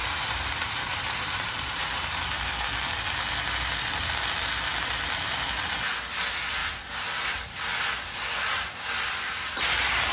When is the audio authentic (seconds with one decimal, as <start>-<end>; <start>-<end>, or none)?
2.2-10.1